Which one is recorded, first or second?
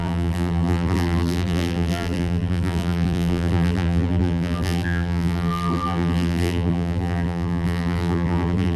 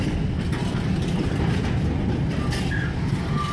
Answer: second